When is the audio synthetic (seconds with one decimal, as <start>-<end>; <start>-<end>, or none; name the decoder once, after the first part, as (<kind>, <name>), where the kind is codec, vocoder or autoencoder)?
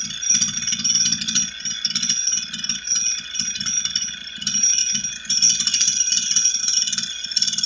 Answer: none